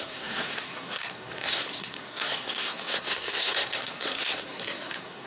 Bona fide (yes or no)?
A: no